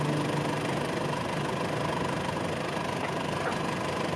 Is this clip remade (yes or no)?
no